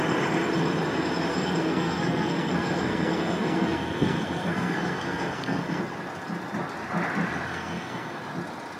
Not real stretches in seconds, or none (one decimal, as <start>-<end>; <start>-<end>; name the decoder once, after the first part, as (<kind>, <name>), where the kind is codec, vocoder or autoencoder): 1.3-5.8 (codec, SNAC); 7.5-8.2